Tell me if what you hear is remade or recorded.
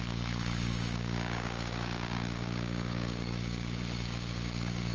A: remade